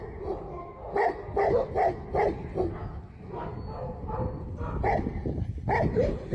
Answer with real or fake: real